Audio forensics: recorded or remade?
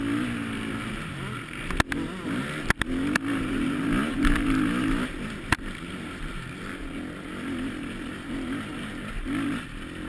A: recorded